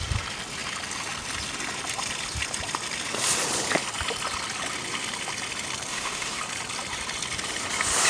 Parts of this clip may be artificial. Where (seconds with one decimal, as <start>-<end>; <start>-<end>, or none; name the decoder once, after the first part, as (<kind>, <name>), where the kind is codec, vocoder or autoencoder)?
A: 5.9-6.4 (autoencoder, DAC-VAE)